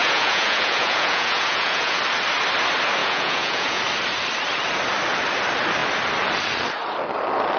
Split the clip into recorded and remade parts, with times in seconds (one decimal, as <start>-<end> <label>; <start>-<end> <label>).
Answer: 0.0-2.0 remade; 2.0-3.0 recorded; 3.0-3.8 remade; 3.8-7.6 recorded